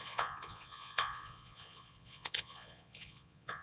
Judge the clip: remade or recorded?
remade